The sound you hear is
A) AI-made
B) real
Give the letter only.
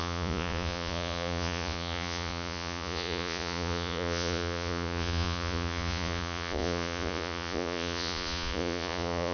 A